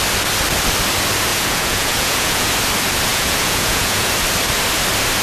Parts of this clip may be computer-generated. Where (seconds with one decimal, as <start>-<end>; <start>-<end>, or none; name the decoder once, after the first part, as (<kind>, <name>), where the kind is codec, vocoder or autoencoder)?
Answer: 1.3-2.5 (vocoder, Vocos); 3.1-4.1